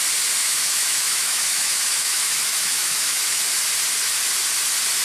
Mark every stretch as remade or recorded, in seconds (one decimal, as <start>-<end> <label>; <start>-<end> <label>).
0.0-0.4 recorded; 0.4-3.4 remade; 3.4-5.0 recorded